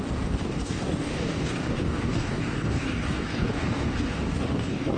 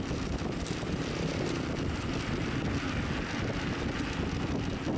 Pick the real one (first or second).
second